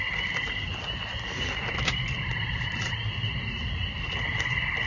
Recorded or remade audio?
recorded